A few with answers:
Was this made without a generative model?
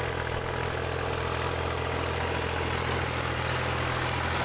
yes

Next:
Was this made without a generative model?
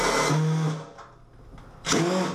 yes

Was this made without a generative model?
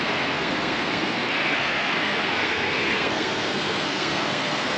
no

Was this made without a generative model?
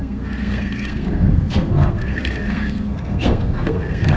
no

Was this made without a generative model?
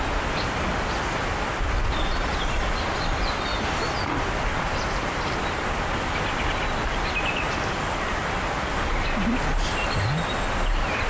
yes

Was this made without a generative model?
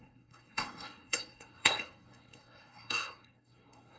no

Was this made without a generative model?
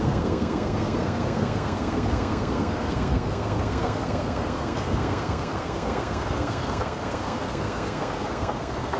no